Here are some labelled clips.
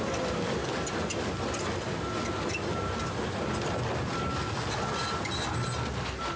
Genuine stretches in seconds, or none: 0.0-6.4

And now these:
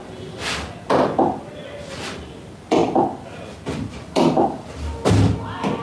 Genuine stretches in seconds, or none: 0.0-5.8

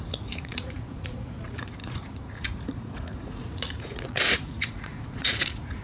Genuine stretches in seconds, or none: none

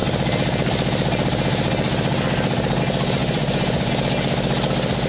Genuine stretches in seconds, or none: 0.0-3.2; 3.9-5.1

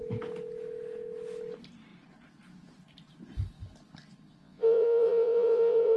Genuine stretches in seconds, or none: 0.0-4.4

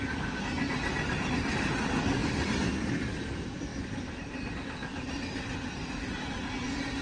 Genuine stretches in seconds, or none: 0.0-7.0